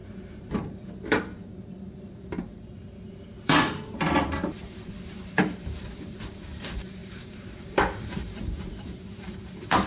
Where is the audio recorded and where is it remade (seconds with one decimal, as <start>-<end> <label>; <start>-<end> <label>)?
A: 0.0-9.9 remade